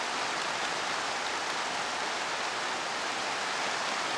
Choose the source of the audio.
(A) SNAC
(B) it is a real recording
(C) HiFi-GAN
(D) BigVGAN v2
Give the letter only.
D